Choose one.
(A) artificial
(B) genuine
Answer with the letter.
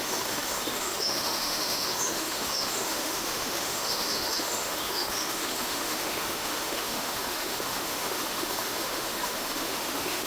A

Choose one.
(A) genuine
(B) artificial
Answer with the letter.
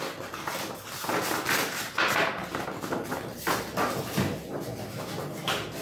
A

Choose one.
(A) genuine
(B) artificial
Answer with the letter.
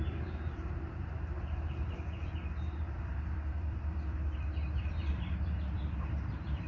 B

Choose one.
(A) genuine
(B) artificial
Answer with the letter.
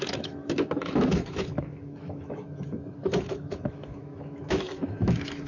B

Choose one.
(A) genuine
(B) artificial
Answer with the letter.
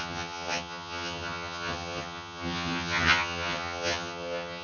B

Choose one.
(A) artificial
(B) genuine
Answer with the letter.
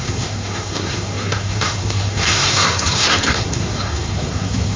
A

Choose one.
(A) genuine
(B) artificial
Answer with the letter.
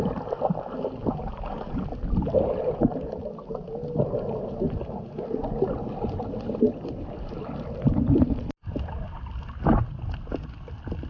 A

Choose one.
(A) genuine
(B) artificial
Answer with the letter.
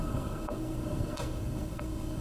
B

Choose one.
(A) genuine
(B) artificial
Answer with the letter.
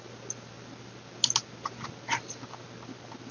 A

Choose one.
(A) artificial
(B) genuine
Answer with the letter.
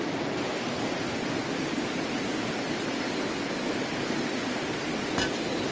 B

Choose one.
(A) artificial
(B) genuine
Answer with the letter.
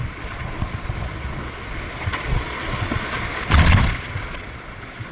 A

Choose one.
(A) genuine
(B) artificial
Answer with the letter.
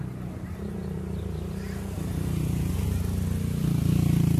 A